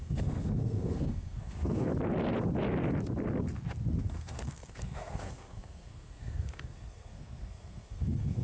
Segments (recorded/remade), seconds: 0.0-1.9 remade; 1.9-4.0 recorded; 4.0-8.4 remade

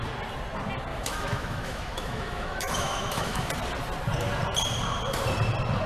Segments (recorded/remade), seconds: 0.0-0.9 recorded; 0.9-3.5 remade; 3.5-5.9 recorded

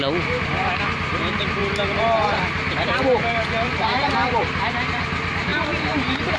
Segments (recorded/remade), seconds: 0.0-6.4 recorded

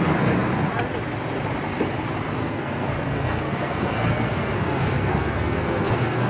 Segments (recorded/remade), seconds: 0.0-2.4 recorded; 2.4-6.3 remade

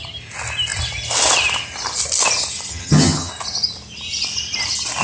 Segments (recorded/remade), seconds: 0.0-2.7 recorded; 2.7-3.3 remade; 3.3-5.0 recorded